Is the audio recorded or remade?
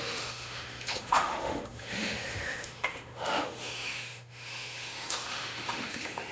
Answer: remade